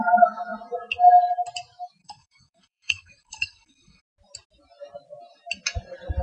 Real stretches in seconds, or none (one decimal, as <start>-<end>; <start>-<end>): 0.0-2.0; 4.0-6.2